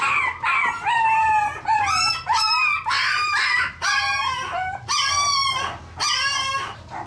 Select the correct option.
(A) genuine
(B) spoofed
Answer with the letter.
A